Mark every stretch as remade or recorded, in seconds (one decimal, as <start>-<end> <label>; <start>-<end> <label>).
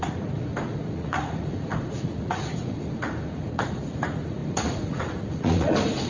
0.0-6.1 remade